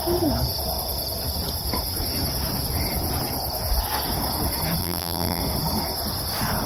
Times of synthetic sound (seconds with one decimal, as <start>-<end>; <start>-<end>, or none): 4.8-5.4